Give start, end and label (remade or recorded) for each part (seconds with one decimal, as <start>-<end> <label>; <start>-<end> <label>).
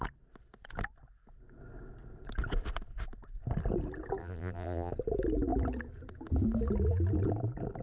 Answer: 0.0-4.2 recorded; 4.2-4.9 remade; 4.9-7.8 recorded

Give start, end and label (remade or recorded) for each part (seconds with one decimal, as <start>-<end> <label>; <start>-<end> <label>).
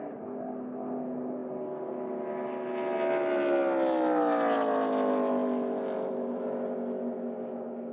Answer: 0.0-7.9 recorded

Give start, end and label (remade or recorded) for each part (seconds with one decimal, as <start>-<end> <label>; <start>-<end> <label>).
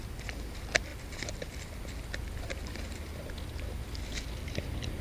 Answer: 0.0-0.9 recorded; 0.9-3.0 remade; 3.0-5.0 recorded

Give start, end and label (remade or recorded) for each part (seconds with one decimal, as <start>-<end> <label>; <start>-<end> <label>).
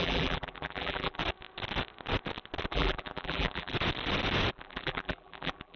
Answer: 0.0-1.2 remade; 1.2-2.7 recorded; 2.7-3.7 remade; 3.7-4.5 recorded; 4.5-5.8 remade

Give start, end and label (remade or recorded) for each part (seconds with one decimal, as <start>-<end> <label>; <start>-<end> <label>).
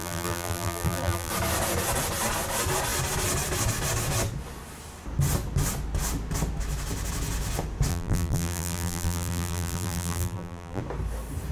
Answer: 0.0-1.3 remade; 1.3-7.9 recorded; 7.9-10.8 remade; 10.8-11.5 recorded